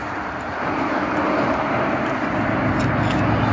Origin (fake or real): real